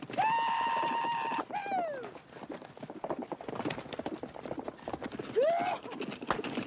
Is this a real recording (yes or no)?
yes